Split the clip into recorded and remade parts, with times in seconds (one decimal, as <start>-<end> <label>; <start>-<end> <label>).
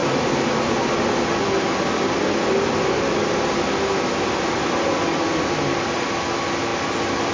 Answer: 0.0-7.3 recorded